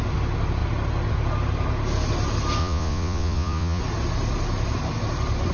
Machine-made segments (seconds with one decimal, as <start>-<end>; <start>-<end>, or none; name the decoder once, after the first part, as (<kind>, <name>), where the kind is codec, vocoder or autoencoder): 2.6-3.8 (vocoder, Vocos)